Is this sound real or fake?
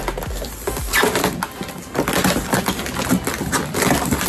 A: real